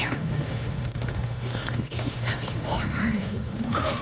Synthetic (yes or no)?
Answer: yes